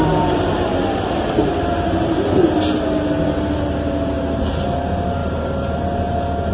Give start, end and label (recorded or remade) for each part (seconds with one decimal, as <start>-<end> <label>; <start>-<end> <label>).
0.0-6.5 recorded